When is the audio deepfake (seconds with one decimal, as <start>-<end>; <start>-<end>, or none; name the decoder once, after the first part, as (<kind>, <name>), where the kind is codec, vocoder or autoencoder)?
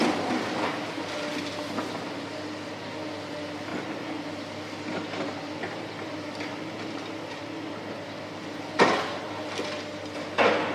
none